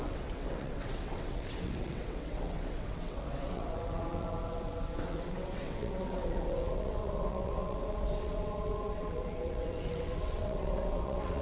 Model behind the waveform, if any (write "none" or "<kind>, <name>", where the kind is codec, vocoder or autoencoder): vocoder, WaveNeXt